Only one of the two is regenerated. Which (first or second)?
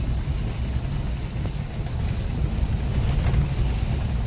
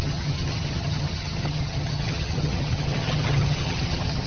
second